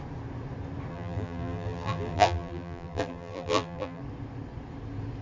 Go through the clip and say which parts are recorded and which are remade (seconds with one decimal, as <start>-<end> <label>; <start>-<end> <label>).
0.0-0.9 recorded; 0.9-4.0 remade; 4.0-5.2 recorded